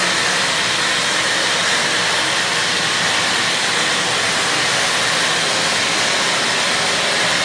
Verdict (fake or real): real